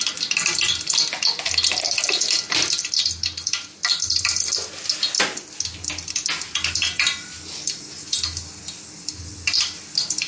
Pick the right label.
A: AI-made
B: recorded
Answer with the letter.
B